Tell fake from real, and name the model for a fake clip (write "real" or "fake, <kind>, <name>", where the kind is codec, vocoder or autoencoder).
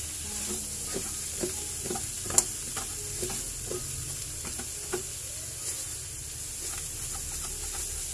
real